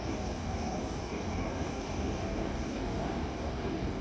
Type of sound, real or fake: fake